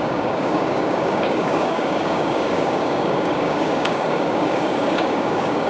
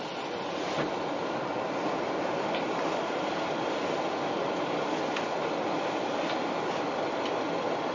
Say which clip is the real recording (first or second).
second